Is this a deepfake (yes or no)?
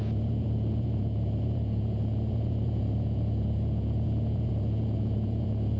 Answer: yes